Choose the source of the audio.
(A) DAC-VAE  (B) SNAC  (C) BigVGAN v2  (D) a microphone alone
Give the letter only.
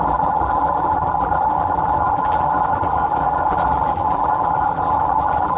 C